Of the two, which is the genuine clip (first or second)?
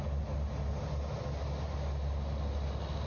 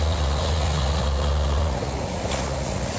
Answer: first